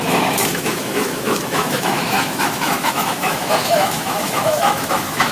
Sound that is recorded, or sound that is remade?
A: remade